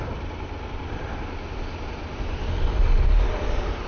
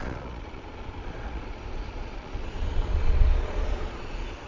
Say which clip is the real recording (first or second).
first